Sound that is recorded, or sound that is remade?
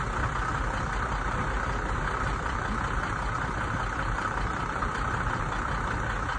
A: recorded